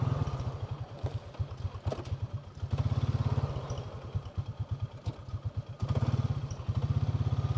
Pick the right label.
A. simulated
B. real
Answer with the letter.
B